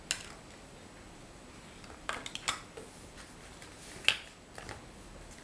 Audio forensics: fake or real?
real